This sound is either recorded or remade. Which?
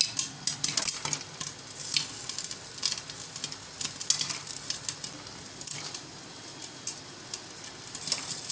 recorded